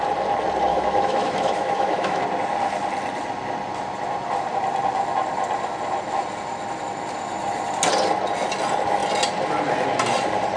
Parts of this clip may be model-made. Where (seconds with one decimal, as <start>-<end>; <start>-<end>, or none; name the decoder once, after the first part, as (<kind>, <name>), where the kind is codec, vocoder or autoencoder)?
0.7-2.2 (autoencoder, DAC-VAE)